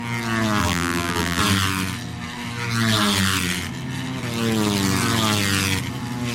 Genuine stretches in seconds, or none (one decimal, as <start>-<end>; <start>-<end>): 0.0-0.6; 1.4-6.3